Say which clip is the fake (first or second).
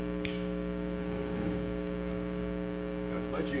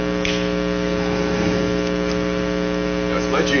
first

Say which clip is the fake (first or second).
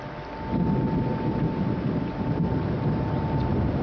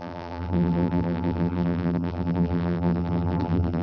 second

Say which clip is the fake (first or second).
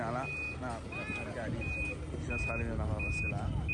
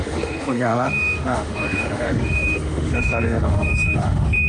second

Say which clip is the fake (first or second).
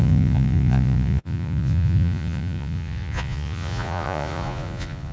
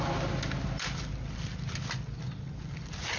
first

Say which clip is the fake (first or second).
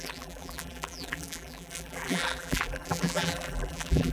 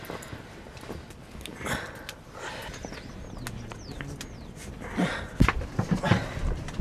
first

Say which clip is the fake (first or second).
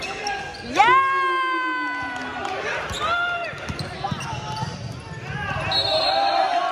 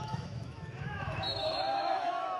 second